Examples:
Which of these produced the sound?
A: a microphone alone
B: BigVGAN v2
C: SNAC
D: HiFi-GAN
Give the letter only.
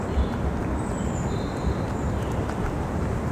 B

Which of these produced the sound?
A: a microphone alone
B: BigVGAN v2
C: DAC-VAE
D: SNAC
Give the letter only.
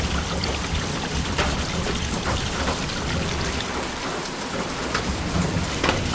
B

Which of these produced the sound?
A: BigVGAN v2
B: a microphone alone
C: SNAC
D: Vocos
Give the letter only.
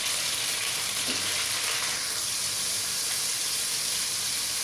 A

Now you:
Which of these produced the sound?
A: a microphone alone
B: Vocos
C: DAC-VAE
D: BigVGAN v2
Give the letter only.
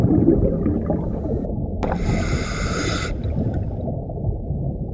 A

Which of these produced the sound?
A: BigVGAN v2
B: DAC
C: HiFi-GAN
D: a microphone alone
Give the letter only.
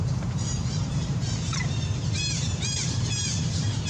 A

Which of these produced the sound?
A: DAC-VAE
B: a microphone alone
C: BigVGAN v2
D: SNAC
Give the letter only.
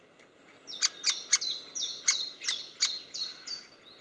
B